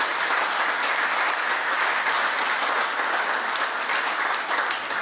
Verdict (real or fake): real